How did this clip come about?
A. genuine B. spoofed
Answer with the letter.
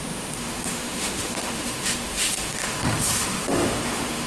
B